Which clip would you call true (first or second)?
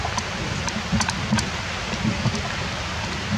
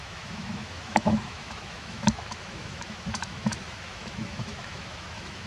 first